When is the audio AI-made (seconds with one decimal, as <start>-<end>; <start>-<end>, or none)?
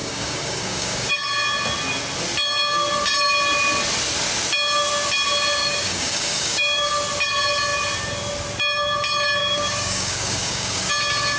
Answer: 0.0-1.1; 5.6-6.9; 9.4-10.9